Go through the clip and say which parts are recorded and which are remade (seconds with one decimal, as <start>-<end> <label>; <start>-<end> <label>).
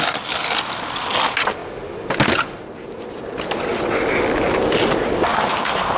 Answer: 0.0-5.3 recorded; 5.3-6.0 remade